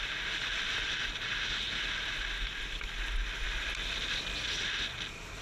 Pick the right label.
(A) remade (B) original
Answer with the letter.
B